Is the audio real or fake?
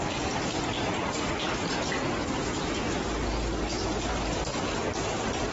real